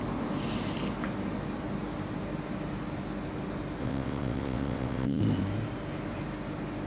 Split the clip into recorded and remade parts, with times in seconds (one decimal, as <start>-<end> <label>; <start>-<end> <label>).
0.0-3.8 recorded; 3.8-5.2 remade; 5.2-6.9 recorded